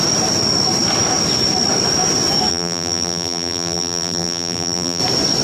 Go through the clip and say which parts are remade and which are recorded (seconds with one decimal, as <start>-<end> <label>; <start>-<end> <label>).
0.0-2.5 recorded; 2.5-5.0 remade; 5.0-5.4 recorded